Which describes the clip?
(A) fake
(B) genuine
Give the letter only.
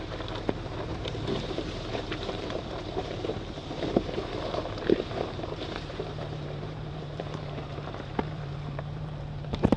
A